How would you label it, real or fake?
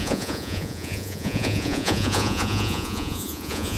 fake